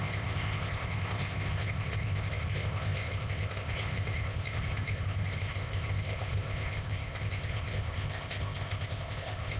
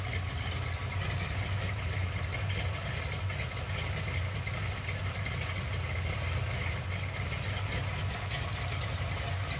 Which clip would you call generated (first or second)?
first